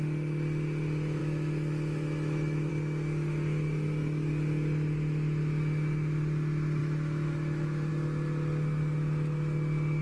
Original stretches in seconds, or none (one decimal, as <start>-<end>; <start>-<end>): 0.0-1.2; 2.7-6.8; 7.9-10.0

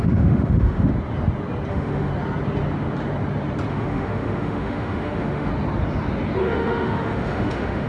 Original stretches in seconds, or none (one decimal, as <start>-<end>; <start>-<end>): 0.9-1.7; 2.1-3.7; 5.5-6.4

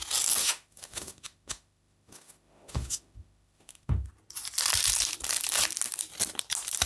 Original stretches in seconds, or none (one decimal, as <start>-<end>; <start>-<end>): 0.0-0.4; 4.1-6.9

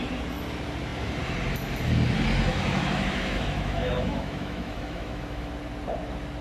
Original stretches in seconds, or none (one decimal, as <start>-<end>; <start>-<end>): 0.0-2.5; 5.5-6.4

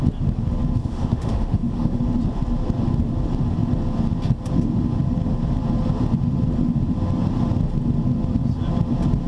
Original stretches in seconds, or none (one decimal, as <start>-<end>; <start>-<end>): 0.0-0.8; 2.0-9.3

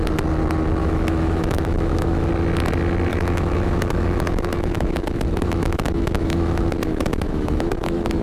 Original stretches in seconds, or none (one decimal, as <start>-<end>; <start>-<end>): 0.0-0.8; 2.3-3.1

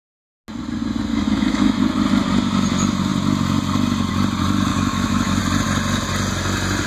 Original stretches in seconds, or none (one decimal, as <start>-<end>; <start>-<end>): 0.0-1.1; 1.8-4.7; 5.4-6.9